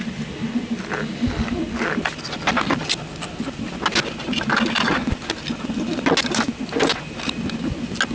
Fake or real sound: real